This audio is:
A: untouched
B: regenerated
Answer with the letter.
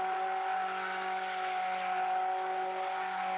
A